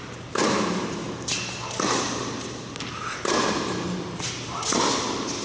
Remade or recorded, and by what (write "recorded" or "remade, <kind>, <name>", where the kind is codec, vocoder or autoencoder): recorded